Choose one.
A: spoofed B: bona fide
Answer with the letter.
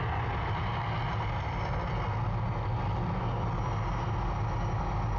B